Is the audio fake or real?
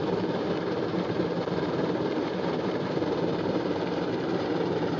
fake